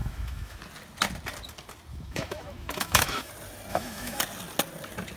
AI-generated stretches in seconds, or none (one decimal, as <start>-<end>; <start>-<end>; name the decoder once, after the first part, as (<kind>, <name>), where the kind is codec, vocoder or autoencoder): 0.0-0.6 (autoencoder, DAC-VAE); 1.9-3.3; 3.7-4.2